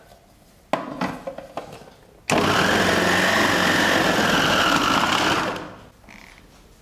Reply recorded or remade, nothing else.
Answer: recorded